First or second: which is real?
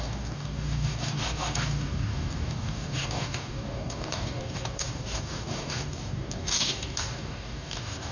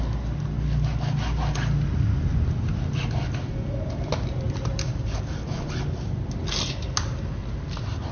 second